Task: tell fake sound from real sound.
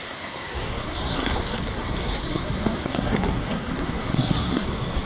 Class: fake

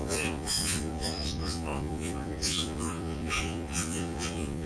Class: fake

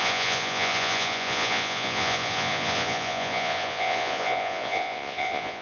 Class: fake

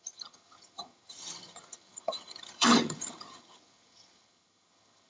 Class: fake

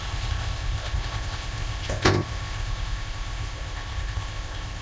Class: fake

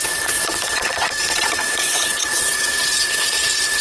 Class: fake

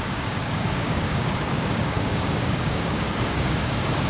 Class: fake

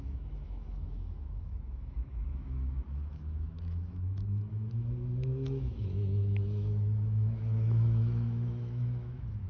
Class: fake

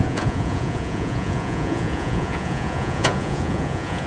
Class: fake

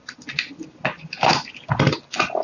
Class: real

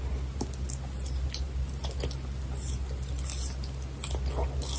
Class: real